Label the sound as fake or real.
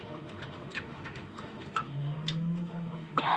fake